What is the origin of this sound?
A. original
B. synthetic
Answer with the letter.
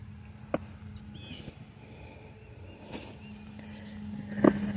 A